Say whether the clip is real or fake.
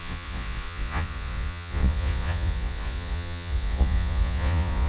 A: fake